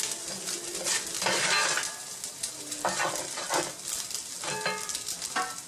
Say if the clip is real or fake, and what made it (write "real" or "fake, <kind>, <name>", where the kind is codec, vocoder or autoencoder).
real